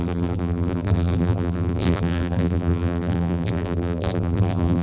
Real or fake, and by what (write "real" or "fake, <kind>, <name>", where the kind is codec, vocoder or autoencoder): fake, vocoder, BigVGAN v2